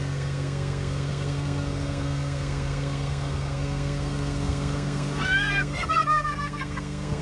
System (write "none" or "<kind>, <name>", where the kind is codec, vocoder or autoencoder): codec, SNAC